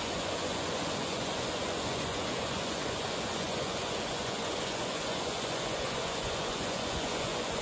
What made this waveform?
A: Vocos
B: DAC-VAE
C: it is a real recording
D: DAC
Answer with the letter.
A